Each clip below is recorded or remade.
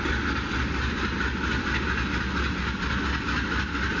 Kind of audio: recorded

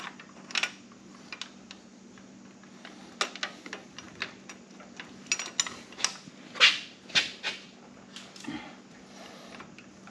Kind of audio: recorded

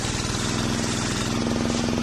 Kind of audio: recorded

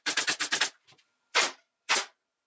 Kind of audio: remade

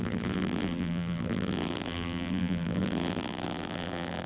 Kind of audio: remade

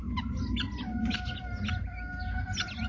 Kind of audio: recorded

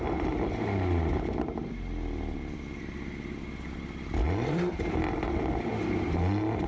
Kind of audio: remade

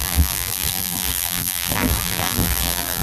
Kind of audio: remade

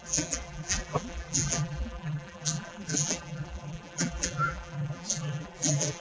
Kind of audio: remade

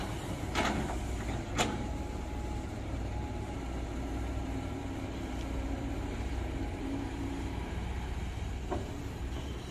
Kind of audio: remade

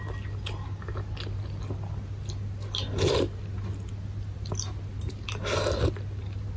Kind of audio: recorded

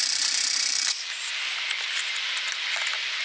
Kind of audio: recorded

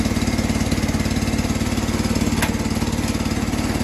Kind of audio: recorded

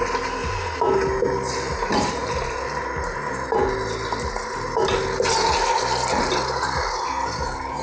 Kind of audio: recorded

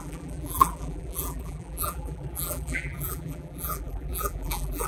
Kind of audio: remade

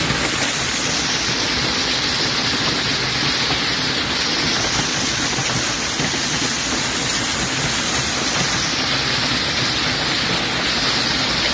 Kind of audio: recorded